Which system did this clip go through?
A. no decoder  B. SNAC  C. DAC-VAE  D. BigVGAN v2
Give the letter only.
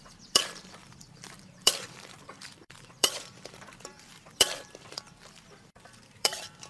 D